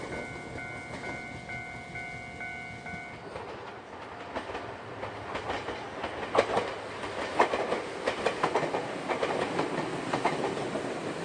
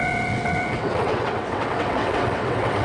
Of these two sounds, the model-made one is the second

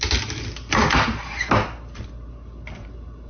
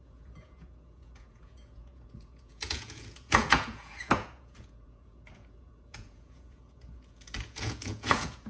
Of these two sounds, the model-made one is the second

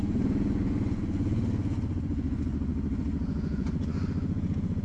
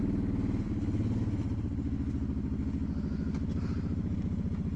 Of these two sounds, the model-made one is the first